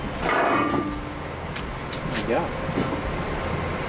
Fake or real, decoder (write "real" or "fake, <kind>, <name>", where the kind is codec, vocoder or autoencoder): real